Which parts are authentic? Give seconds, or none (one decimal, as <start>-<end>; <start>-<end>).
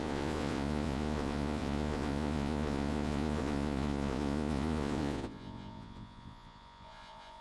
none